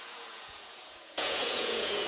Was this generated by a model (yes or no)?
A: yes